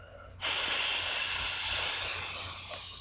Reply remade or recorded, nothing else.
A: recorded